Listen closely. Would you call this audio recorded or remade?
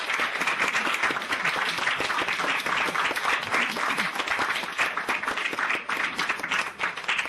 recorded